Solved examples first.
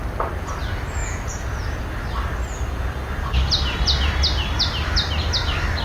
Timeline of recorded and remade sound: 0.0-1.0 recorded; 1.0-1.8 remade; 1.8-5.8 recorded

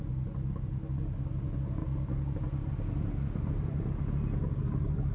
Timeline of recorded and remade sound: 0.0-5.1 recorded